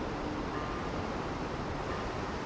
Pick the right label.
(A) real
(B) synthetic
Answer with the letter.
A